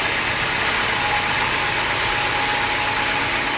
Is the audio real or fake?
real